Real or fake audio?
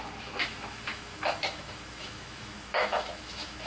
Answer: fake